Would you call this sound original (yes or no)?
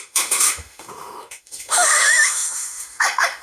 no